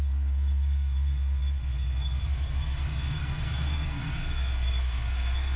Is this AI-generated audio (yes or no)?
yes